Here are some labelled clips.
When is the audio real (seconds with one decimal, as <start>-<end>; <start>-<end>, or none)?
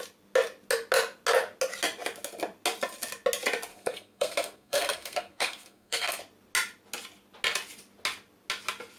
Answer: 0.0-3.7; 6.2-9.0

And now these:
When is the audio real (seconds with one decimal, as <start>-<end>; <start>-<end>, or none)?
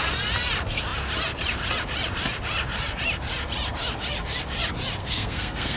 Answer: 0.0-5.0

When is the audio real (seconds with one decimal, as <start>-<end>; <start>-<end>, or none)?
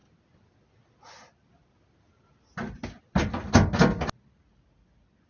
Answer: 0.0-5.3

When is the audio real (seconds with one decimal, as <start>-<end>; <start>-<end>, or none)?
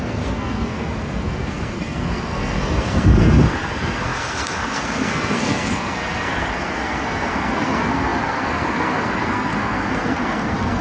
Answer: none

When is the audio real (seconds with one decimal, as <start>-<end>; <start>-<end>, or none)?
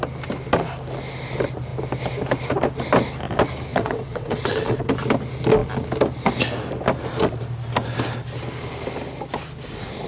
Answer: 0.0-3.7; 4.9-10.1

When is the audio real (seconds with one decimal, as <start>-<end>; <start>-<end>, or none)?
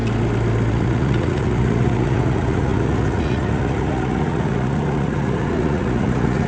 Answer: 0.0-0.7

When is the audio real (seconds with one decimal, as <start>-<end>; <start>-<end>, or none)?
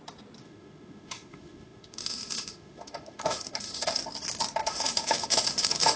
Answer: 0.0-0.4; 4.0-4.6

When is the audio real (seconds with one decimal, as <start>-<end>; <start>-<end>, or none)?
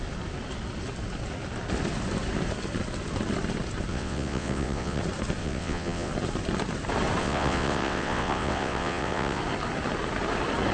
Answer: 0.0-3.9; 5.0-5.4; 6.1-7.2; 9.4-10.7